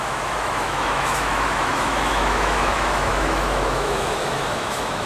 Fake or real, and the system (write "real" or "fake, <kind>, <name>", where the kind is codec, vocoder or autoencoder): fake, autoencoder, DAC-VAE